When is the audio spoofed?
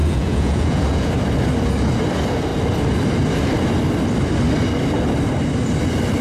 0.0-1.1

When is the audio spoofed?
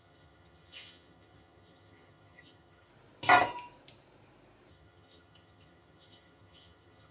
0.0-2.9; 4.7-7.1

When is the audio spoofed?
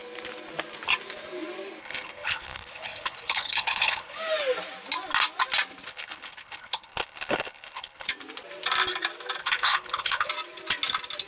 1.8-4.2; 5.9-8.1; 9.4-10.3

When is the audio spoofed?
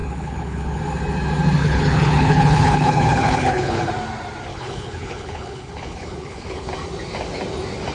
0.0-0.8; 1.6-3.9; 4.5-6.7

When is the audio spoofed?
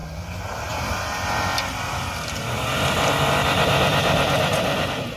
none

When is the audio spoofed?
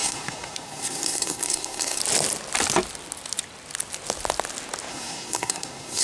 0.0-2.0; 4.9-6.0